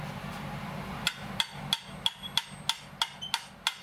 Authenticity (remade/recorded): recorded